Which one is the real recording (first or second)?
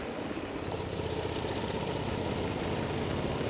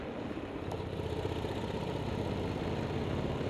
second